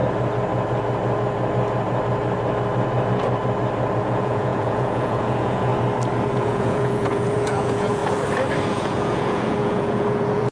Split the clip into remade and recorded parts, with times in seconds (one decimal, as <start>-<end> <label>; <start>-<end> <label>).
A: 0.0-4.0 recorded; 4.0-5.7 remade; 5.7-6.3 recorded; 6.3-8.0 remade; 8.0-8.7 recorded; 8.7-10.5 remade